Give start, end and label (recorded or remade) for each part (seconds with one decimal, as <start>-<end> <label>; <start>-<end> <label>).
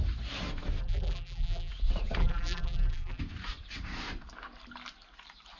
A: 0.0-0.8 recorded; 0.8-1.7 remade; 1.7-2.2 recorded; 2.2-3.2 remade; 3.2-5.6 recorded